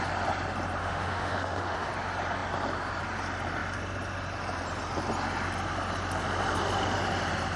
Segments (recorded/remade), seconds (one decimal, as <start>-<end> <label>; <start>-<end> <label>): 0.0-0.8 recorded; 0.8-1.9 remade; 1.9-7.6 recorded

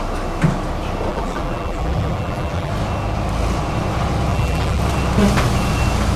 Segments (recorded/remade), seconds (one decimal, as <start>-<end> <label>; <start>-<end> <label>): 0.0-1.1 recorded; 1.1-2.7 remade; 2.7-4.3 recorded; 4.3-4.8 remade; 4.8-6.2 recorded